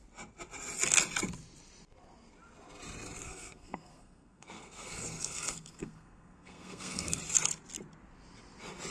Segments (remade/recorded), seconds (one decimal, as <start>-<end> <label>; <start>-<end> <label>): 0.0-3.2 recorded; 3.2-7.2 remade; 7.2-8.9 recorded